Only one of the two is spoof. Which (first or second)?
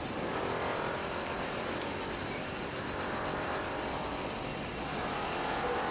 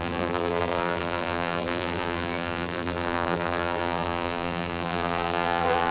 second